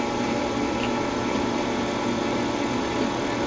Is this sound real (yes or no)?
no